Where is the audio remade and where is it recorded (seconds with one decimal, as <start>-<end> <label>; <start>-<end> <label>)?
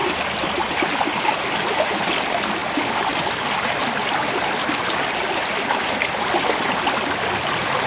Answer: 0.0-7.9 recorded